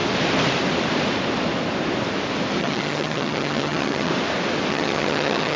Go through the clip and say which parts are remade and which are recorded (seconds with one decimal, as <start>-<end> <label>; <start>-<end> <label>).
0.0-2.6 recorded; 2.6-4.1 remade; 4.1-4.7 recorded; 4.7-5.6 remade